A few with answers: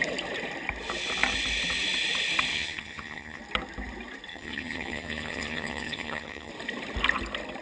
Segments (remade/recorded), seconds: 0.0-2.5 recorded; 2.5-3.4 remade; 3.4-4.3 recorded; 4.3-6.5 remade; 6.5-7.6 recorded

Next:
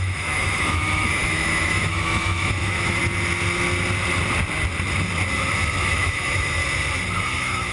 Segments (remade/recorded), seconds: 0.0-3.0 remade; 3.0-5.9 recorded; 5.9-6.6 remade; 6.6-7.2 recorded; 7.2-7.7 remade

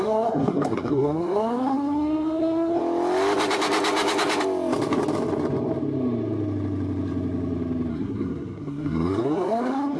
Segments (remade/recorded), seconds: 0.0-2.8 remade; 2.8-7.9 recorded; 7.9-10.0 remade

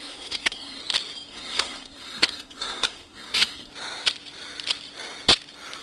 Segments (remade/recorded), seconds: 0.0-0.8 remade; 0.8-1.3 recorded; 1.3-3.7 remade; 3.7-5.8 recorded